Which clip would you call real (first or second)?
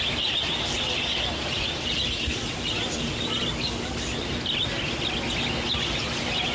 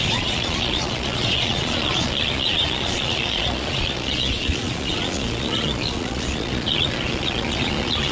first